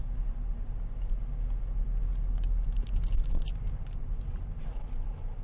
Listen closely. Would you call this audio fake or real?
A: real